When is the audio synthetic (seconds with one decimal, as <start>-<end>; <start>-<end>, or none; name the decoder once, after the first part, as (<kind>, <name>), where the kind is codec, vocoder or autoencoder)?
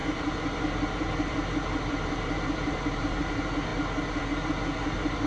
0.0-3.2 (vocoder, BigVGAN v2)